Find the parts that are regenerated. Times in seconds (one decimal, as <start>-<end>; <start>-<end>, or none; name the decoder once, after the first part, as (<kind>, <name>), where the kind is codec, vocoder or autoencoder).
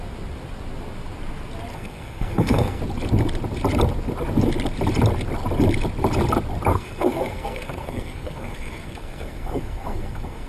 1.7-2.8 (codec, SNAC); 6.7-10.5